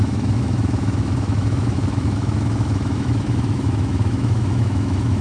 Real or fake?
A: fake